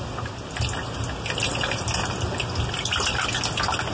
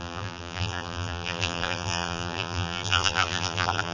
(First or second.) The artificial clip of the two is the second